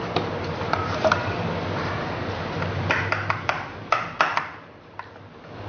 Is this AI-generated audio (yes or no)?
yes